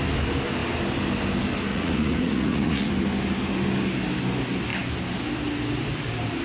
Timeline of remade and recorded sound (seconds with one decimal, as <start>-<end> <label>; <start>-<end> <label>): 0.0-1.7 recorded; 1.7-2.9 remade; 2.9-6.4 recorded